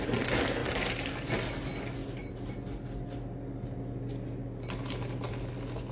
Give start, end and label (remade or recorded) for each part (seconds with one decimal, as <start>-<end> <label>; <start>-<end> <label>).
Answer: 0.0-5.9 recorded